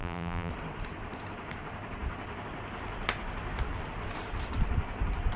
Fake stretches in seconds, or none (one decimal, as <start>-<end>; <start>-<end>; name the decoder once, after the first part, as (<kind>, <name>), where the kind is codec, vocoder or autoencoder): 0.0-0.5 (vocoder, BigVGAN v2)